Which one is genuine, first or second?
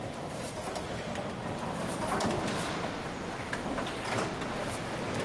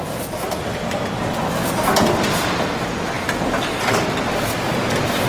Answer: second